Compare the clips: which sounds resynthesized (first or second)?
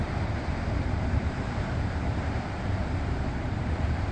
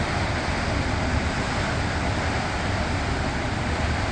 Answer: first